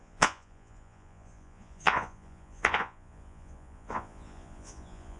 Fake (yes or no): yes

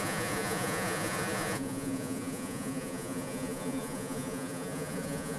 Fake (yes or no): yes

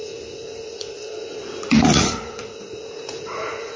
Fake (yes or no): yes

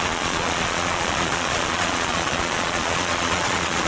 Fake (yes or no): yes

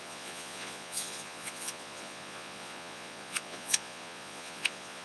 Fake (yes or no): yes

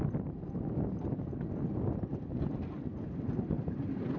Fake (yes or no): no